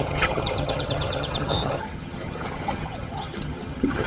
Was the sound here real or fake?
fake